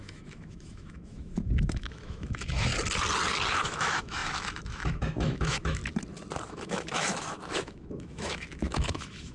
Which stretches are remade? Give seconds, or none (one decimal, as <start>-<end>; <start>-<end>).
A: 0.0-2.7; 3.5-5.8; 6.5-9.3